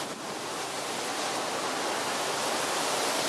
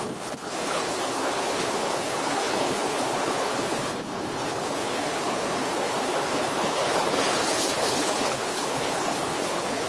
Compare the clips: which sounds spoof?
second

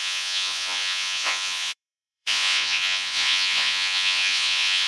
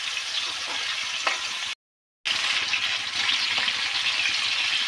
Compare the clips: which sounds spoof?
first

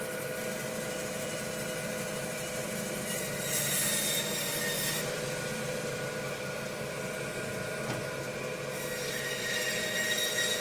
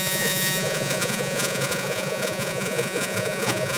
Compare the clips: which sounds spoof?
second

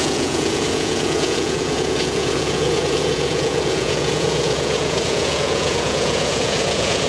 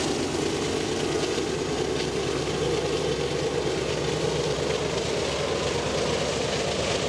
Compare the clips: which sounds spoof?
first